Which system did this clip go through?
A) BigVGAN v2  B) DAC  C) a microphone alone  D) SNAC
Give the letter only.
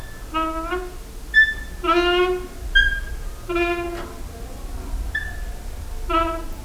C